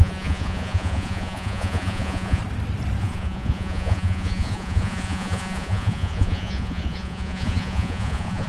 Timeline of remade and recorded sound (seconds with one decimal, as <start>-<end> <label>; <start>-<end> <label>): 0.0-2.4 remade; 2.4-3.0 recorded; 3.0-8.5 remade

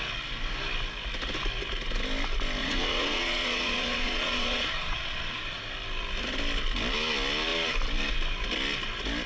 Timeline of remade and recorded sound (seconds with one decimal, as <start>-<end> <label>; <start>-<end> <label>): 0.0-2.6 recorded; 2.6-5.6 remade; 5.6-9.3 recorded

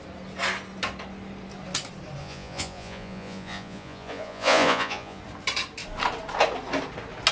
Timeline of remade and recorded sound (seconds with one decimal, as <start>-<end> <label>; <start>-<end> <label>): 0.0-2.2 recorded; 2.2-5.2 remade; 5.2-7.3 recorded

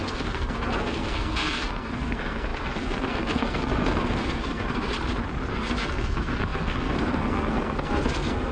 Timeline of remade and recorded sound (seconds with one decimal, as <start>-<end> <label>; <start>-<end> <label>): 0.0-4.9 remade; 4.9-5.5 recorded; 5.5-8.5 remade